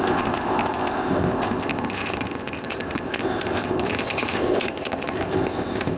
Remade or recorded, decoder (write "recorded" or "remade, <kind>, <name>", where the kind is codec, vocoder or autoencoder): remade, codec, ZipCodec